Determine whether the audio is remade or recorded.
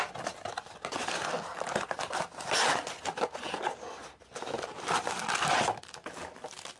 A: recorded